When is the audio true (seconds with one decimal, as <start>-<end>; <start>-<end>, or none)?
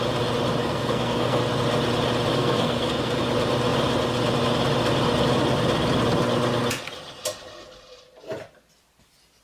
0.0-0.6; 1.4-2.3; 3.2-9.4